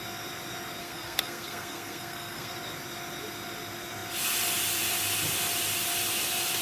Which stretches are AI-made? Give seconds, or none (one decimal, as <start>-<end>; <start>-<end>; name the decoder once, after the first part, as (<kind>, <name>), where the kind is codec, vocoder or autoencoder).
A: 0.8-2.5 (codec, SNAC)